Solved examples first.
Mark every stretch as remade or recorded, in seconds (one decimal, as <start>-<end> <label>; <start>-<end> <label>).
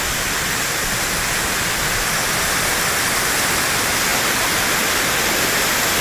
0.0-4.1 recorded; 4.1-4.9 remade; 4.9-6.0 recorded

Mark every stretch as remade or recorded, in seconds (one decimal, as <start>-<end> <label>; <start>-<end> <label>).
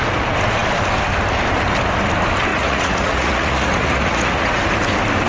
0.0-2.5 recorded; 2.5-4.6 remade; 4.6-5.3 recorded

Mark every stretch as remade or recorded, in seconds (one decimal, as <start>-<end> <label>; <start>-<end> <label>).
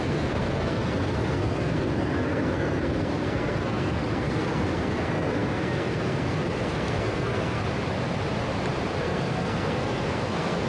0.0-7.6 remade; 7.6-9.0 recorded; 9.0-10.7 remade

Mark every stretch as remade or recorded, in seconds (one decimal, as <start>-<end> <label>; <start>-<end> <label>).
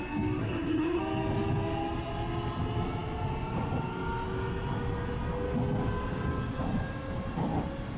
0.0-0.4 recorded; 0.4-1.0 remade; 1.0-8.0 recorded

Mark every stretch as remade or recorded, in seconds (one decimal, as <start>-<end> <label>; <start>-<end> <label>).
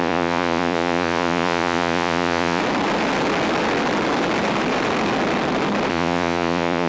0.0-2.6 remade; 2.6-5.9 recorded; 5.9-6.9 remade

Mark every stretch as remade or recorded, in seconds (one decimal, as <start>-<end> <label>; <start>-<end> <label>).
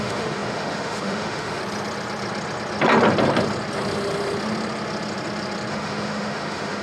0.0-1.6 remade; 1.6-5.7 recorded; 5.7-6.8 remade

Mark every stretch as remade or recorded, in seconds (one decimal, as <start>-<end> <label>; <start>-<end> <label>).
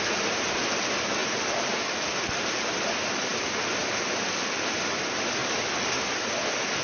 0.0-6.8 recorded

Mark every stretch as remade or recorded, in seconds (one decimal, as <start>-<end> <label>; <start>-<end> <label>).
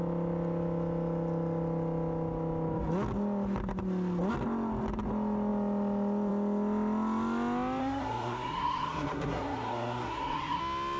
0.0-7.8 recorded; 7.8-10.6 remade; 10.6-11.0 recorded